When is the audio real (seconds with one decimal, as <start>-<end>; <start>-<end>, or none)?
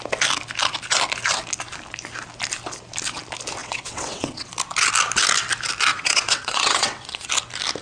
0.0-3.6; 4.5-5.9; 7.3-7.8